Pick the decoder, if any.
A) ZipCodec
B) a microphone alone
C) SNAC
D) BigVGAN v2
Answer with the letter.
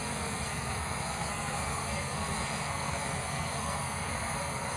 C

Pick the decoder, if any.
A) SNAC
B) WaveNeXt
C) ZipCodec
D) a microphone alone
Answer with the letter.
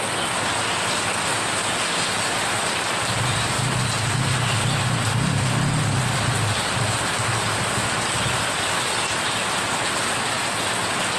D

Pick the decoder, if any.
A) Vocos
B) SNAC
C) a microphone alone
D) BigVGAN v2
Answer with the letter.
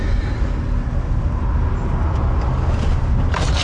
C